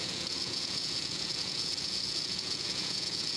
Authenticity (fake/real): fake